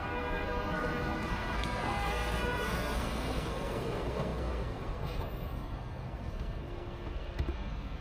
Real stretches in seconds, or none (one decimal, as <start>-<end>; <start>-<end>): none